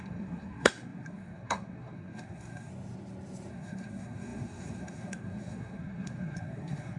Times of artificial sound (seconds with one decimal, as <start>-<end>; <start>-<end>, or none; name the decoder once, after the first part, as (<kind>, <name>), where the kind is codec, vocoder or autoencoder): 0.0-2.7 (codec, SNAC); 3.5-7.0